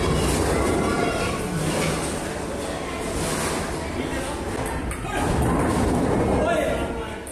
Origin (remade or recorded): recorded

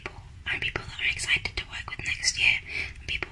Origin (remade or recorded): recorded